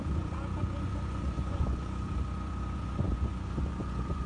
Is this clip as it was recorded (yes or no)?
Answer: no